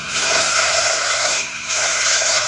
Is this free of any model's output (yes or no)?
no